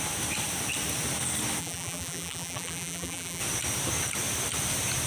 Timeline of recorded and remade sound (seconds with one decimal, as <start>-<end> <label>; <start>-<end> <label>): 0.0-1.6 recorded; 1.6-3.4 remade; 3.4-5.1 recorded